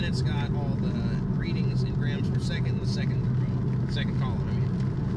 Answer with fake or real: real